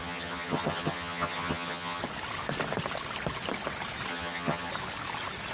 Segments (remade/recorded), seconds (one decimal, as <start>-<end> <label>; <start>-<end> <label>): 0.0-2.0 remade; 2.0-4.1 recorded; 4.1-4.7 remade; 4.7-5.5 recorded